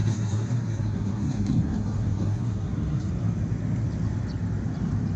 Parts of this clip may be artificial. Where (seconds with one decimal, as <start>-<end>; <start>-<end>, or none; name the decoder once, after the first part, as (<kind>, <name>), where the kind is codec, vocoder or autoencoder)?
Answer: 0.0-3.1 (codec, SNAC)